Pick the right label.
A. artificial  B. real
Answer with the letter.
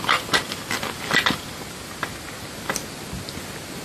B